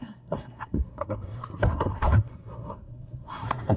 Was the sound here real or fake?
fake